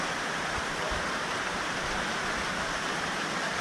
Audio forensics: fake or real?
fake